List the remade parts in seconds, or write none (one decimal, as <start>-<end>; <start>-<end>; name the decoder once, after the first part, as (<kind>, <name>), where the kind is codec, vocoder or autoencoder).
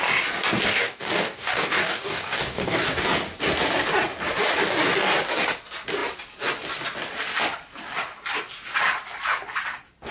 0.7-2.8 (codec, DAC)